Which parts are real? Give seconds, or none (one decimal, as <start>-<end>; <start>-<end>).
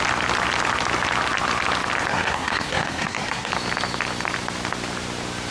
0.0-2.1; 3.5-5.5